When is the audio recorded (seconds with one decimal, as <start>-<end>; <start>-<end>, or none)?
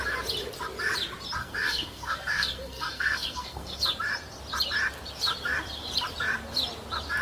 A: 0.0-1.4; 3.8-7.2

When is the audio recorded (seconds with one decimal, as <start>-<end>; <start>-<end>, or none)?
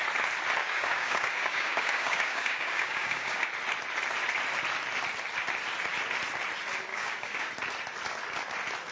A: 0.0-0.6; 3.5-6.9; 7.5-8.9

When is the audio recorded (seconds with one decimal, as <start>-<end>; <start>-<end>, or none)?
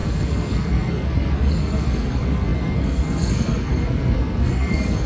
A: none